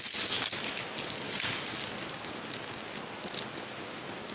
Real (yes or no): yes